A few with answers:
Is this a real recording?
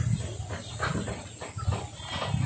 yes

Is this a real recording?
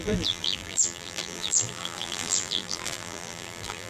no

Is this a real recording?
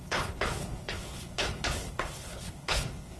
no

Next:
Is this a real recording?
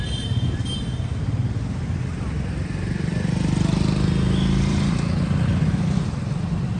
yes